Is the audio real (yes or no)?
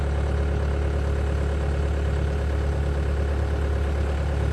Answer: yes